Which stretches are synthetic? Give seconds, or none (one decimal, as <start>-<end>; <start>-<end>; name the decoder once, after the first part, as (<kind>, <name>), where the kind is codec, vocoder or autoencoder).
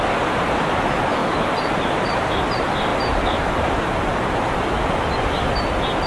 1.2-2.5 (vocoder, BigVGAN v2); 2.9-4.0